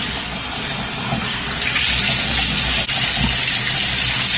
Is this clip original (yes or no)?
yes